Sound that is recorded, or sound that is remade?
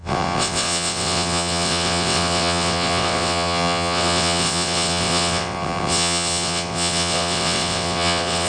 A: remade